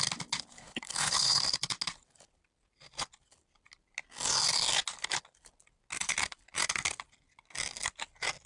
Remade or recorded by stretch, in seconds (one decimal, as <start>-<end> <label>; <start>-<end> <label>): 0.0-0.6 recorded; 0.6-1.4 remade; 1.4-8.5 recorded